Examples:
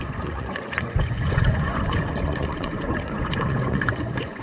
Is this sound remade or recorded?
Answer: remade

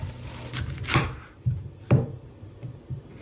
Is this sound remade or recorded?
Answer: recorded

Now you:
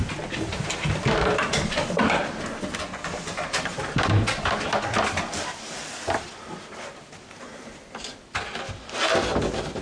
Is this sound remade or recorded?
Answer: recorded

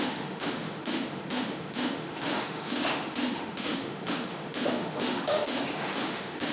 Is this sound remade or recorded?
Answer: remade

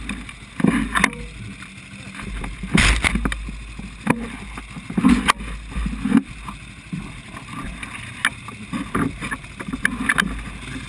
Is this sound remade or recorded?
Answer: recorded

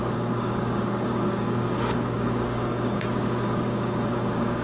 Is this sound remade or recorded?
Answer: remade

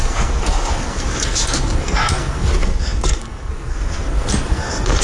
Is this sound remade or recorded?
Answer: remade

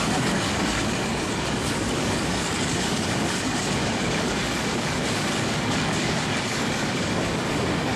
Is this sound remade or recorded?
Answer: remade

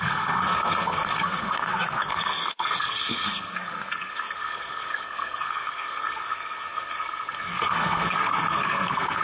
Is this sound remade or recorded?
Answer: remade